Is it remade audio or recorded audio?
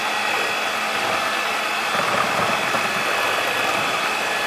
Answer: recorded